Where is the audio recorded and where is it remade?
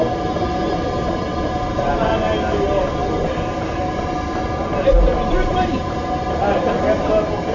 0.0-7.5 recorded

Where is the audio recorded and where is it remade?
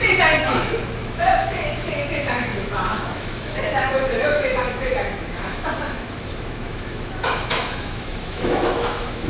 0.0-9.3 remade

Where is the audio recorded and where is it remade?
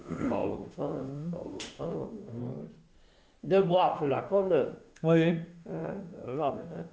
0.0-2.4 remade; 2.4-3.4 recorded; 3.4-6.9 remade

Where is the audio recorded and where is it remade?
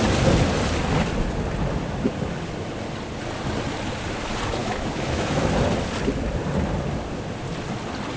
0.0-4.6 recorded; 4.6-5.5 remade; 5.5-8.2 recorded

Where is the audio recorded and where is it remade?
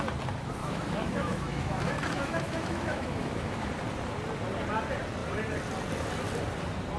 0.0-0.6 recorded; 0.6-3.7 remade; 3.7-7.0 recorded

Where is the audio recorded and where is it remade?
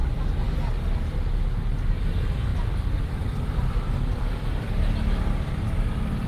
0.0-6.3 recorded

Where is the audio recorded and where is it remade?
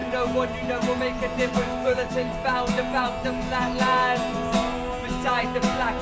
0.0-1.5 recorded; 1.5-2.3 remade; 2.3-6.0 recorded